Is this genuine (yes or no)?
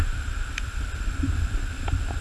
no